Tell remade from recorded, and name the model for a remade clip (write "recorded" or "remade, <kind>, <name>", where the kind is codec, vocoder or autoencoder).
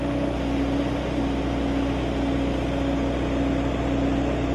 recorded